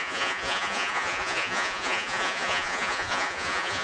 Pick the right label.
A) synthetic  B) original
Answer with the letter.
A